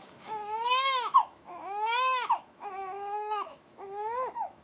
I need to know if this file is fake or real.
fake